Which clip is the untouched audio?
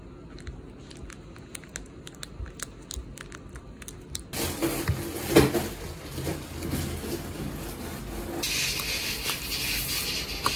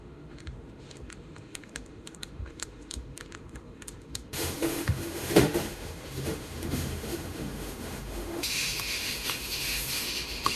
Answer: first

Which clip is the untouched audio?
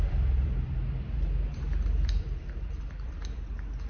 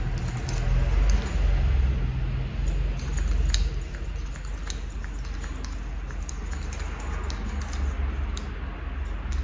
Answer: second